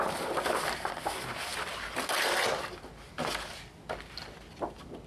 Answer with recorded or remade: recorded